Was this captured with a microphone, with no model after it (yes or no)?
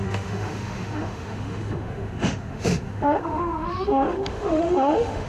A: no